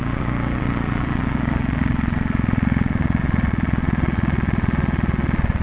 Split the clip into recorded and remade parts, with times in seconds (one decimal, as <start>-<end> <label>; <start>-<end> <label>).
0.0-5.6 remade